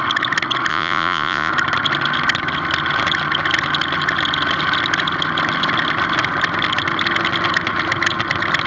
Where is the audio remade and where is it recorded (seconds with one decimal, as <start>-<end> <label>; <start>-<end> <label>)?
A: 0.0-0.7 recorded; 0.7-1.5 remade; 1.5-8.7 recorded